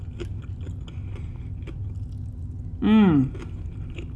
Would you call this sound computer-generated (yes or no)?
no